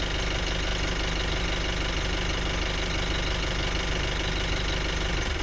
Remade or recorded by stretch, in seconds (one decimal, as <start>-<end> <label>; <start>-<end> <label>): 0.0-5.4 recorded